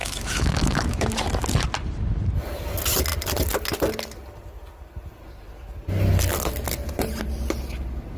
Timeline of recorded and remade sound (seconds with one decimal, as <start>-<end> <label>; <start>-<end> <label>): 0.0-1.2 remade; 1.2-8.2 recorded